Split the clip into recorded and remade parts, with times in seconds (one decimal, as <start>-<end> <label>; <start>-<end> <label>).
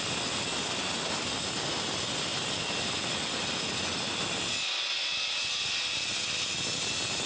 0.0-7.3 recorded